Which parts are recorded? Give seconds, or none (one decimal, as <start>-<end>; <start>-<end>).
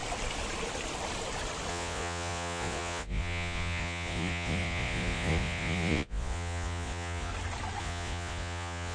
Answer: 0.0-1.7; 7.3-7.8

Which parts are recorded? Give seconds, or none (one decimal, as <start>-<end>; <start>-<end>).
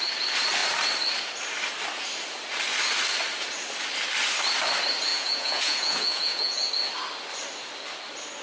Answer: 0.0-5.1; 6.7-8.4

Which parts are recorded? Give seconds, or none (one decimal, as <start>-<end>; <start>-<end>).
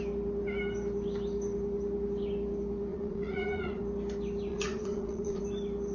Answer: 0.0-2.9; 3.8-4.5; 5.4-5.9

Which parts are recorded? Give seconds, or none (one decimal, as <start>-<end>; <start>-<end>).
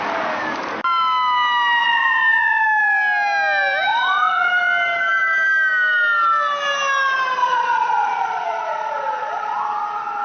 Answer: 0.0-1.8; 2.6-3.9; 4.5-7.4; 9.6-10.2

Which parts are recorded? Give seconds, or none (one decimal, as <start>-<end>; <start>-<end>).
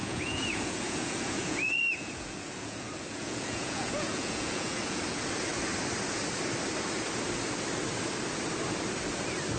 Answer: 5.0-9.6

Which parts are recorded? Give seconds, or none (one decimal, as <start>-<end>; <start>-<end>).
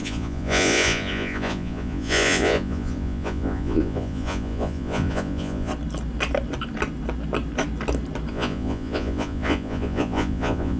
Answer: 5.7-8.3